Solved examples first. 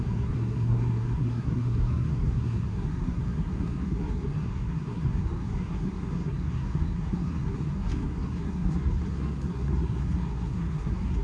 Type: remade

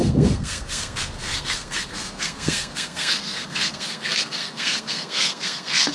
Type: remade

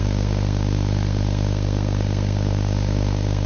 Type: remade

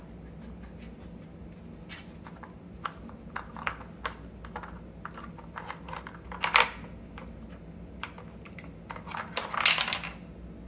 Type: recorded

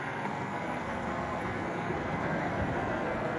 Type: remade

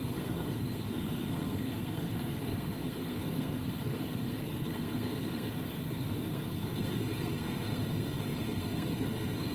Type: remade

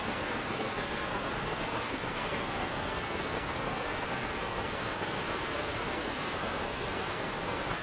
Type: remade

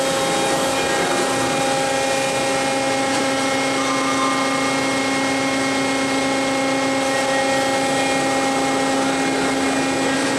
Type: recorded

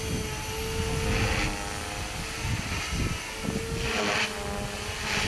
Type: recorded